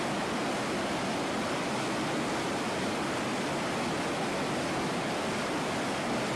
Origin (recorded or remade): recorded